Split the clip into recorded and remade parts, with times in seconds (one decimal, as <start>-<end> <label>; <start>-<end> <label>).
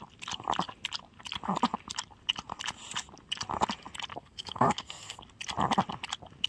0.0-4.1 recorded; 4.1-5.2 remade; 5.2-6.5 recorded